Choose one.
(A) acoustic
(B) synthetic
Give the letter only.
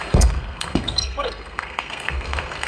B